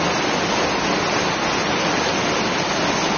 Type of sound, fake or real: real